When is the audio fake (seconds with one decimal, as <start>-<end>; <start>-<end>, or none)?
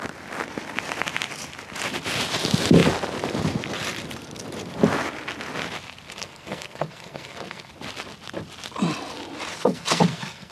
6.2-7.7; 9.5-10.5